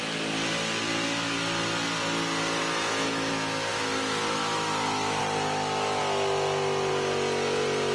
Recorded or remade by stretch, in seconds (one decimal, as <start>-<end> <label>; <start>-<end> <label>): 0.0-2.6 recorded; 2.6-3.3 remade; 3.3-3.7 recorded; 3.7-5.2 remade; 5.2-7.9 recorded